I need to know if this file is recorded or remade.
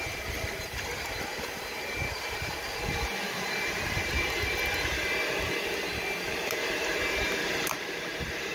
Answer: remade